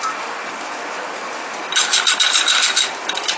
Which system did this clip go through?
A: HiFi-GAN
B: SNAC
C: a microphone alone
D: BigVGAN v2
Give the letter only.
C